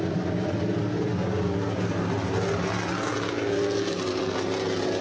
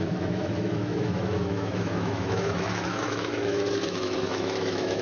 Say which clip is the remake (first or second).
second